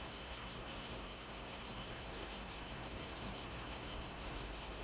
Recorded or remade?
remade